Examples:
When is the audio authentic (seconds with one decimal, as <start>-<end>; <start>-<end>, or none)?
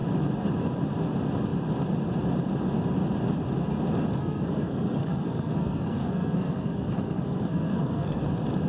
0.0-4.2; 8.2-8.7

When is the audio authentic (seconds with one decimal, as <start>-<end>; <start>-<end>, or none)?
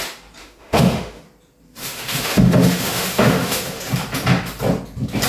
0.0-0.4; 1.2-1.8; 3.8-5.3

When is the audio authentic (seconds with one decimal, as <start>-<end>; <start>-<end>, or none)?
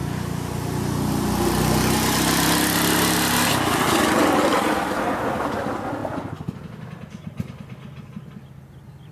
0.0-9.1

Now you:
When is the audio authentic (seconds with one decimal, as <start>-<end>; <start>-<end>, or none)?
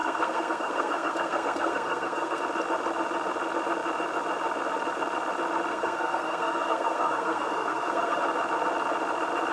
2.4-5.7; 8.2-9.5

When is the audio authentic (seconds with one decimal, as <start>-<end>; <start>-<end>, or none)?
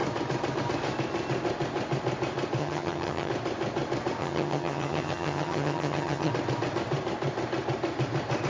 0.0-2.6; 3.3-4.2; 6.3-8.5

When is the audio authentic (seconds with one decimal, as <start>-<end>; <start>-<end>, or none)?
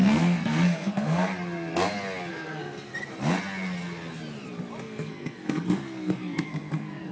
1.3-2.3; 2.9-4.8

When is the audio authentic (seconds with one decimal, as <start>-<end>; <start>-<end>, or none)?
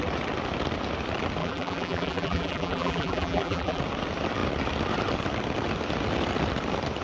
0.0-1.4; 3.8-7.0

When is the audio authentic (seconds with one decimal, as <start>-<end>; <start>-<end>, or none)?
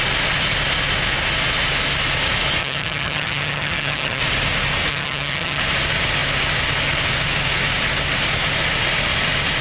0.0-2.6; 4.2-4.9; 5.6-9.6